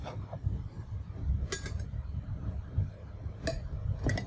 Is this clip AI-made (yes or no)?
no